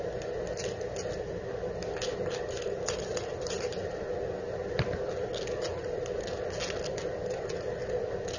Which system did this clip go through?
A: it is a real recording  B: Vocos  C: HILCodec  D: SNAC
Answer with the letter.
A